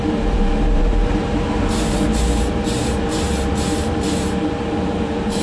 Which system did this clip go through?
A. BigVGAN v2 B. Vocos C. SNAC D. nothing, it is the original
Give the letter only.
A